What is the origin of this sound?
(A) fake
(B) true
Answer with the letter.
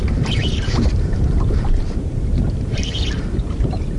A